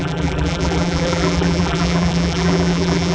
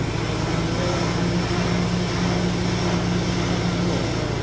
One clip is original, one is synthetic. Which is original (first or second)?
second